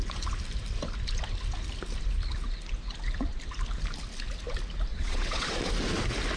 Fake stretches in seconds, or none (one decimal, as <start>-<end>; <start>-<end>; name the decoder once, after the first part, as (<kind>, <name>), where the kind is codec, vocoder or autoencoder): 4.9-5.7 (vocoder, Vocos)